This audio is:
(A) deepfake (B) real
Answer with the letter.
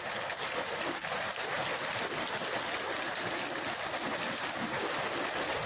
B